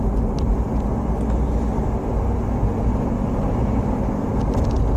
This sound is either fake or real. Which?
real